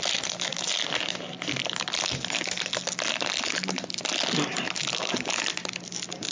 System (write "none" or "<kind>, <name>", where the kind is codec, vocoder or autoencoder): none